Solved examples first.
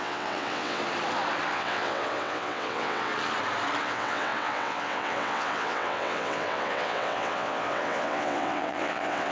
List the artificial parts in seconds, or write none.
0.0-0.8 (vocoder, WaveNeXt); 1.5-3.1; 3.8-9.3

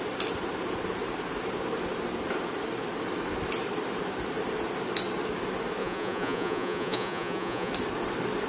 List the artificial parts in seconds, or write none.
5.8-7.7 (vocoder, Vocos)